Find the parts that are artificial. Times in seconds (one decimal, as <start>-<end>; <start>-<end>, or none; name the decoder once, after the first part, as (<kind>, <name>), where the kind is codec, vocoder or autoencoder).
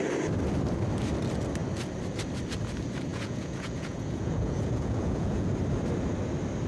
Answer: 3.1-5.5 (vocoder, Vocos)